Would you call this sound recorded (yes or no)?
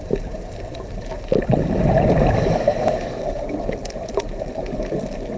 no